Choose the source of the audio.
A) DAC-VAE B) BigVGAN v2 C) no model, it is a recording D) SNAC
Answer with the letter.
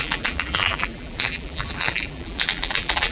B